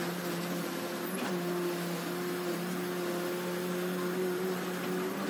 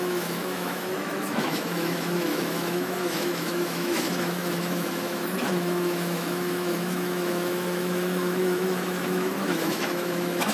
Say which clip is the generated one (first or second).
second